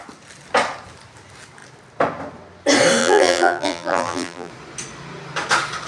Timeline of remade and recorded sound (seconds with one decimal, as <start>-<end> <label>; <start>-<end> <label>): 0.0-3.0 recorded; 3.0-4.5 remade; 4.5-5.9 recorded